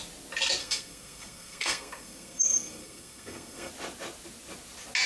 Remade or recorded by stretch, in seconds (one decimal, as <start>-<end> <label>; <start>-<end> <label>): 0.0-0.6 recorded; 0.6-3.7 remade; 3.7-5.1 recorded